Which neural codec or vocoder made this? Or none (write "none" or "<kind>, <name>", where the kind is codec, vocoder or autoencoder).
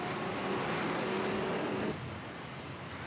none